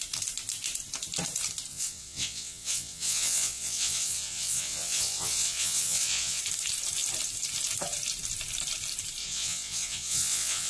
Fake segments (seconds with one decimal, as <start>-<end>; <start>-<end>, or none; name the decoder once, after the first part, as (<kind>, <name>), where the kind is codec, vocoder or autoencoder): 1.7-6.4 (vocoder, WaveNeXt); 9.2-10.7